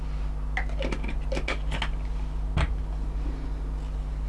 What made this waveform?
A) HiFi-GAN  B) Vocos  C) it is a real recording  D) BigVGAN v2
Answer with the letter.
C